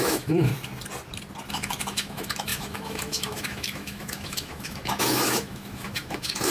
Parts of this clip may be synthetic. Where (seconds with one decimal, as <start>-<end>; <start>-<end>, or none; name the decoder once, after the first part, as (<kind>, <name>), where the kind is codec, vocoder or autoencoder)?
0.0-0.5 (autoencoder, DAC-VAE); 1.5-6.5